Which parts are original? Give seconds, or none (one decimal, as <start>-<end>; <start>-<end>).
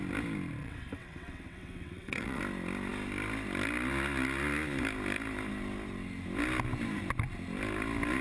0.0-0.6; 2.4-8.2